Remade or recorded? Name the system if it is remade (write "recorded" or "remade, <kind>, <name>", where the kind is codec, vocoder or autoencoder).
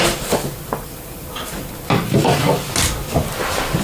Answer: recorded